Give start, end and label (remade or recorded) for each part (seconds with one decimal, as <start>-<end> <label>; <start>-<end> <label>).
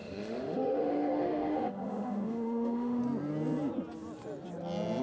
0.0-3.0 remade; 3.0-5.0 recorded